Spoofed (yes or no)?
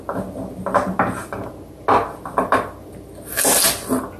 no